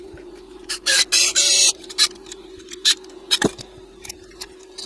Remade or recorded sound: remade